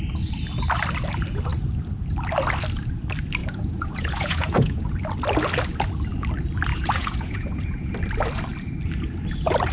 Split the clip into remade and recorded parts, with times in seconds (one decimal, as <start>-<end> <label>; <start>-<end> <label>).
0.0-3.4 recorded; 3.4-5.0 remade; 5.0-6.7 recorded; 6.7-7.9 remade; 7.9-9.7 recorded